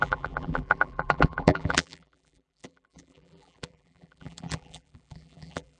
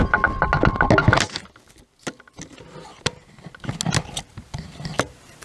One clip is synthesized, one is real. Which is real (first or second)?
second